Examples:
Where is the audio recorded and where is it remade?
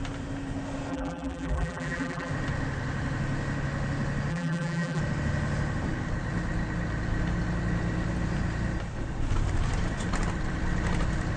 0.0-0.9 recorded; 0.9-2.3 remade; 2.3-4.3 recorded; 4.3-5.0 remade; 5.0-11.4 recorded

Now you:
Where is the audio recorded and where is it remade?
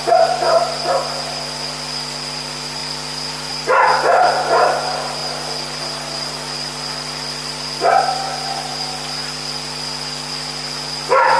0.0-2.8 remade; 2.8-3.5 recorded; 3.5-8.7 remade; 8.7-10.3 recorded; 10.3-11.4 remade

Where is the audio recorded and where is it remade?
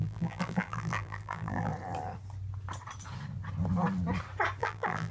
0.0-1.7 remade; 1.7-4.6 recorded; 4.6-5.1 remade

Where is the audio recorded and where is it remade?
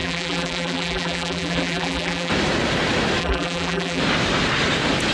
0.0-2.3 remade; 2.3-3.2 recorded; 3.2-4.0 remade; 4.0-5.1 recorded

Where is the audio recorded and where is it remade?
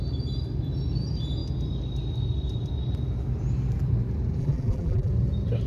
0.0-4.4 recorded; 4.4-5.1 remade; 5.1-5.7 recorded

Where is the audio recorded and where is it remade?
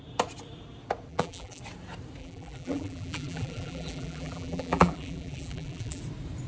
0.0-1.1 recorded; 1.1-1.6 remade; 1.6-2.2 recorded; 2.2-6.0 remade; 6.0-6.5 recorded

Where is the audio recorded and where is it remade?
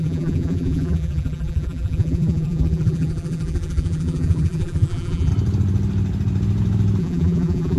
0.0-5.3 remade; 5.3-7.0 recorded; 7.0-7.8 remade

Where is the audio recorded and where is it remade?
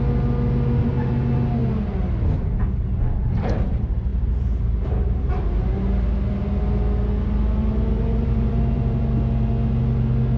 0.0-4.1 recorded; 4.1-5.3 remade; 5.3-7.6 recorded; 7.6-9.1 remade; 9.1-10.4 recorded